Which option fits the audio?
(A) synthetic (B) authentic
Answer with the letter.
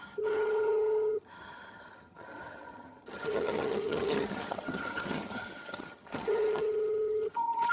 A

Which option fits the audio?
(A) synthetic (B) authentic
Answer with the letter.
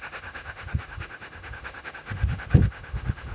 A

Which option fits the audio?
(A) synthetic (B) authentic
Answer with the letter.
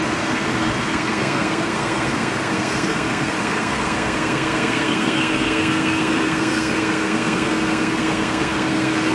A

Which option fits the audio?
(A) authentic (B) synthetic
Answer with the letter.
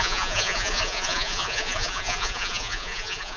B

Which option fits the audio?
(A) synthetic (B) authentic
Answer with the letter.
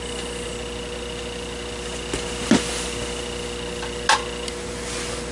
B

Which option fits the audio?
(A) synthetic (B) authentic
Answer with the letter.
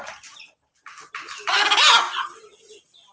B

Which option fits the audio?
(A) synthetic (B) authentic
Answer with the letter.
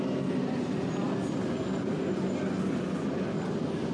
B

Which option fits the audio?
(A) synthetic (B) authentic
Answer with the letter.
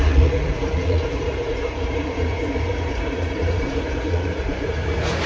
A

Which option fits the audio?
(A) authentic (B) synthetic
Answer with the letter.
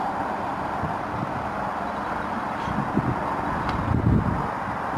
A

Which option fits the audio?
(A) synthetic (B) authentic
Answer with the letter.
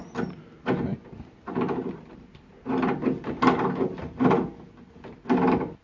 B